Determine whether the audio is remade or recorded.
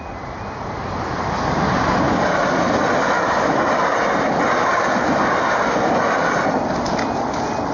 recorded